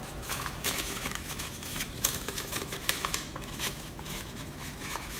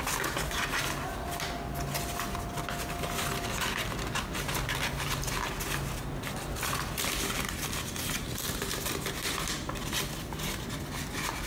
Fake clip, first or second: first